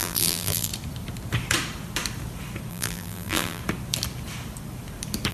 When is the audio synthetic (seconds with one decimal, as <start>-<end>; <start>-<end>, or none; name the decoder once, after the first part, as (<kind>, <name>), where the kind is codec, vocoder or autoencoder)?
0.0-0.7 (vocoder, BigVGAN v2); 2.7-3.6